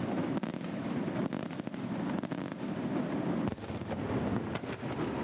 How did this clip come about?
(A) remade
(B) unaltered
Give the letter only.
B